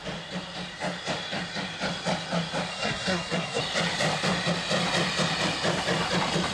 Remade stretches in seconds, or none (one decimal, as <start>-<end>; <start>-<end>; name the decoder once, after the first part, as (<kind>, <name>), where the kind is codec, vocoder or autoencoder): 2.7-3.6 (codec, SNAC)